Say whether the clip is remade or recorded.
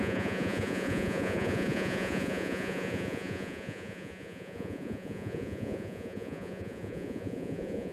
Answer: remade